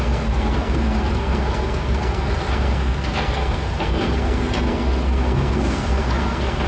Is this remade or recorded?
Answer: remade